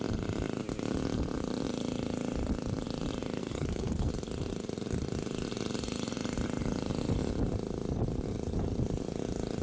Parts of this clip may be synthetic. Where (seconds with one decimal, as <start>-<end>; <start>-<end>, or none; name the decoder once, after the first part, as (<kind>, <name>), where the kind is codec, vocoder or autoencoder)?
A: 3.4-4.1 (codec, SNAC)